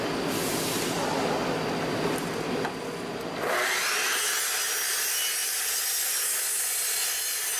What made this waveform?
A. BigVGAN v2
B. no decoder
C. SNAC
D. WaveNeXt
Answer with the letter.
B